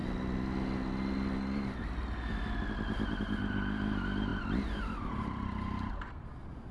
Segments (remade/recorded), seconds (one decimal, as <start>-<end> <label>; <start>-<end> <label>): 0.0-6.7 recorded